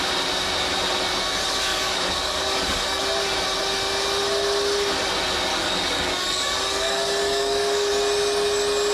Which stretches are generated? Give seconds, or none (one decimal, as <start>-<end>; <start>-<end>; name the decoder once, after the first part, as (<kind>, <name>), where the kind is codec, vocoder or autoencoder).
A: 1.7-3.0 (codec, DAC); 5.5-7.9